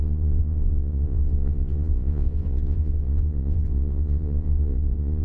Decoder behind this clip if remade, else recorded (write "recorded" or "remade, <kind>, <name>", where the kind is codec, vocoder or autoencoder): remade, vocoder, Vocos